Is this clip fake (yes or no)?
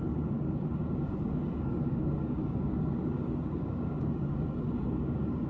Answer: yes